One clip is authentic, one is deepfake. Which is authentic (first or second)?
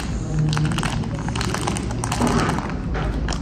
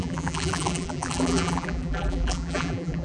first